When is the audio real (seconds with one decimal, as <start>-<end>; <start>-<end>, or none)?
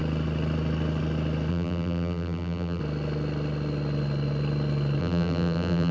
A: 0.0-1.5; 2.8-5.0